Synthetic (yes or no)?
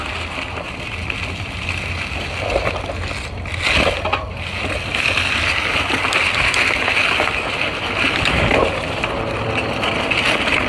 no